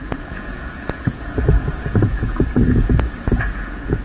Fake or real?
fake